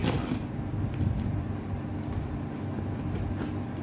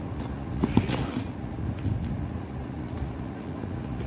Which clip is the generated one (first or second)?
second